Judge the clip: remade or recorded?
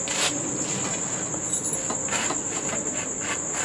recorded